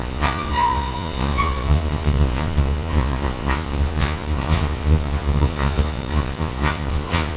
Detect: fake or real fake